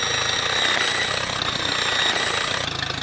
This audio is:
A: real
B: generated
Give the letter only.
A